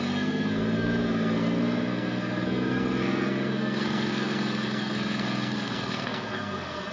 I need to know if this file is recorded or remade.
remade